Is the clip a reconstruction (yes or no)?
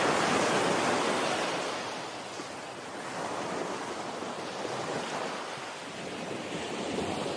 no